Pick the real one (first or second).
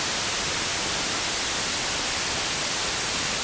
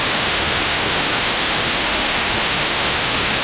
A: first